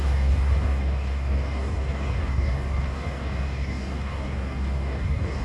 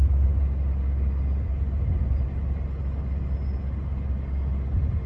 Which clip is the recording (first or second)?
second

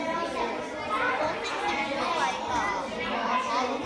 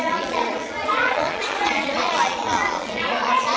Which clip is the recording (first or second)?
first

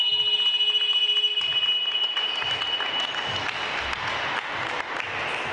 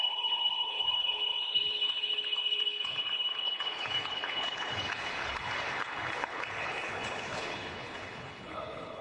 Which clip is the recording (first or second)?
first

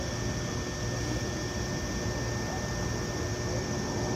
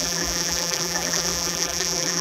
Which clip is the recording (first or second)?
first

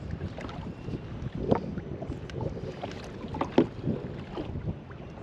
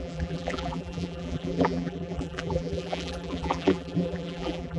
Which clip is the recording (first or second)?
first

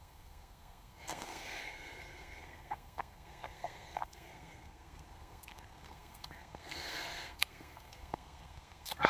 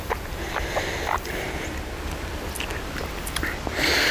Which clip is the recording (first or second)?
second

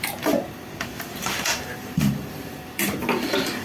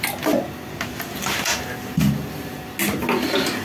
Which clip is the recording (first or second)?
second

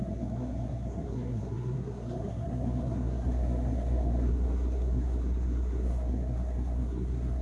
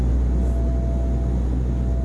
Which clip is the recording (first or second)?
second